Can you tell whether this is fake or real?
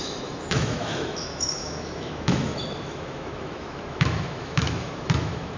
fake